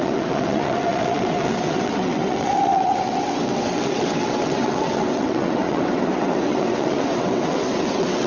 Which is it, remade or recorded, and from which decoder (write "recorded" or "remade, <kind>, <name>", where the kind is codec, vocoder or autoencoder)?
remade, vocoder, WaveNeXt